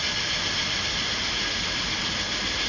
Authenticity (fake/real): real